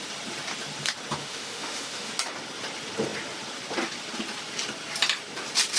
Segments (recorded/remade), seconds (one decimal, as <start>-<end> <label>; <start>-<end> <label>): 0.0-1.2 recorded; 1.2-2.1 remade; 2.1-5.8 recorded